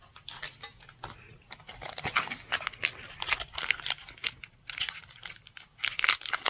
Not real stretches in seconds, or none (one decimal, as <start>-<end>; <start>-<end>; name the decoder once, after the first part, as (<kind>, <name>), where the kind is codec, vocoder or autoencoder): 4.2-5.0 (vocoder, Vocos)